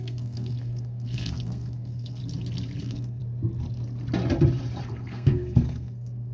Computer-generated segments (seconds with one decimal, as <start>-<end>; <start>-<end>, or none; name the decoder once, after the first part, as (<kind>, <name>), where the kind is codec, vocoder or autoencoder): 0.0-2.2 (codec, SNAC); 2.8-3.2; 4.9-6.3